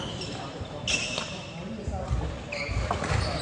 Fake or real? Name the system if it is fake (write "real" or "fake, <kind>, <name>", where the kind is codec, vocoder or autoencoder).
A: real